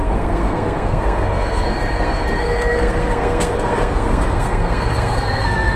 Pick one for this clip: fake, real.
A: fake